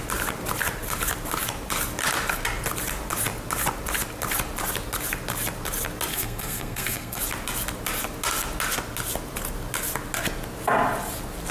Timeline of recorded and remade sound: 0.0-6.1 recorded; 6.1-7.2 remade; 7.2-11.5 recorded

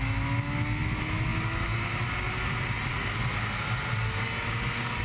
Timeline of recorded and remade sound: 0.0-5.0 recorded

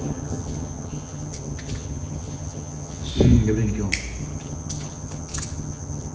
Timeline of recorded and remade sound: 0.0-3.1 remade; 3.1-4.2 recorded; 4.2-6.1 remade